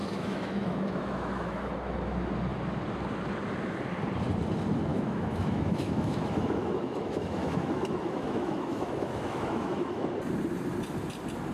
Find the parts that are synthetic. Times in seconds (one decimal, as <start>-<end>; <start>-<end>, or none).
0.0-1.7; 4.9-10.1